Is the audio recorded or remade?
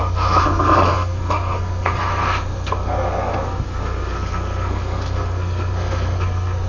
remade